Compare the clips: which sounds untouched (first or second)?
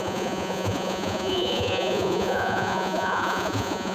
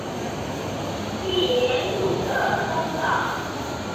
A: second